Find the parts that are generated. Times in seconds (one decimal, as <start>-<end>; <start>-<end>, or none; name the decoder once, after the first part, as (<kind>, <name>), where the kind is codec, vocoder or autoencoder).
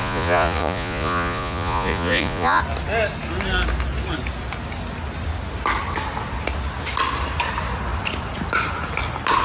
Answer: 0.0-2.6 (vocoder, Vocos)